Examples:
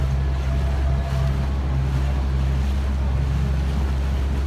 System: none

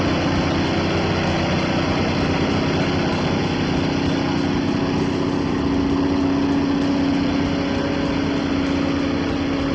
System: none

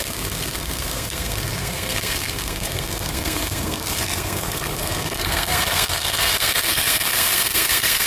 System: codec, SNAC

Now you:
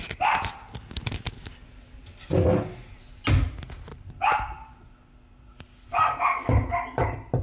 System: none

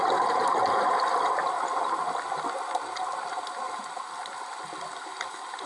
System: none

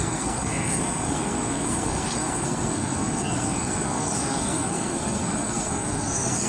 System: codec, SNAC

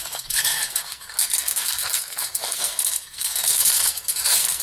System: codec, SNAC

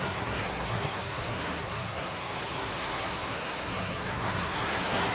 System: codec, SNAC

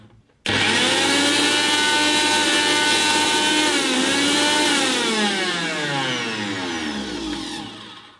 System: none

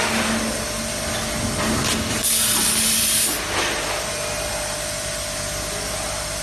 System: none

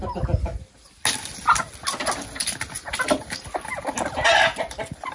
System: none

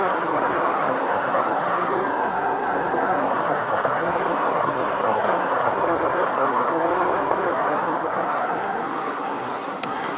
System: codec, SNAC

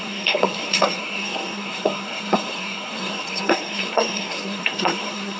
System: codec, SNAC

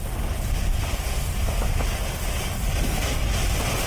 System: none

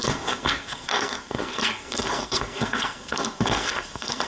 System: codec, SNAC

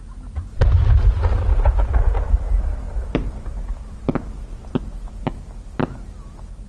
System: none